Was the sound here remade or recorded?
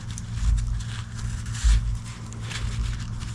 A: recorded